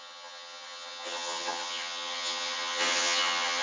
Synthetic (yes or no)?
yes